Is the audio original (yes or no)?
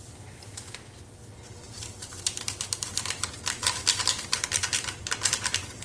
yes